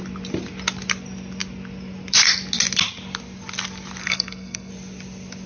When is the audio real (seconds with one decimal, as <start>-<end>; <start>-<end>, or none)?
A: 0.0-4.0; 4.7-5.5